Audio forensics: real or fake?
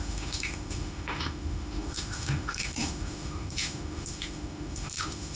fake